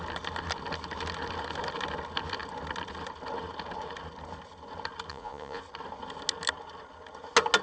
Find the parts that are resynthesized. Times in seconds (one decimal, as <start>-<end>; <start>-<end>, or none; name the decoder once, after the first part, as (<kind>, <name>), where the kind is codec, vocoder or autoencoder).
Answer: 5.1-5.6 (vocoder, Vocos)